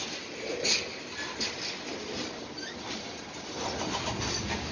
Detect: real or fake real